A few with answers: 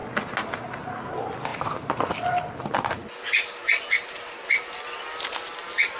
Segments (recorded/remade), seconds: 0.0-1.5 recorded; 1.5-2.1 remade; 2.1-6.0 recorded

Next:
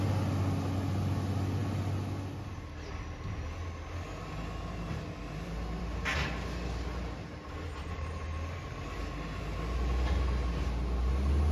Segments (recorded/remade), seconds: 0.0-11.5 recorded

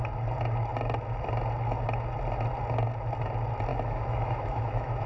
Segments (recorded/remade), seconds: 0.0-3.7 recorded; 3.7-5.1 remade

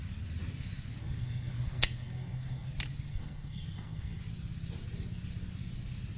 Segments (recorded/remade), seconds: 0.0-1.0 recorded; 1.0-2.7 remade; 2.7-3.1 recorded; 3.1-4.2 remade; 4.2-6.2 recorded

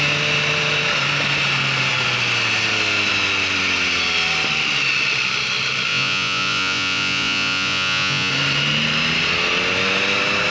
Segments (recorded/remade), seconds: 0.0-5.9 recorded; 5.9-8.3 remade; 8.3-10.5 recorded